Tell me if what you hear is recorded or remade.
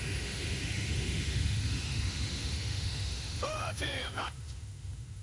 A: remade